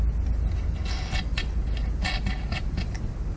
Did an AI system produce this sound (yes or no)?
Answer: no